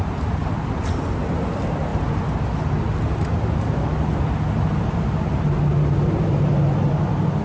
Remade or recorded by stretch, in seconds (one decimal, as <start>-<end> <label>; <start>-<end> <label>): 0.0-7.4 recorded